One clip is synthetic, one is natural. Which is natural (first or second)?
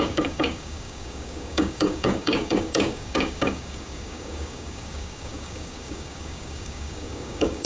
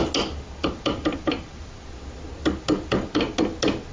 second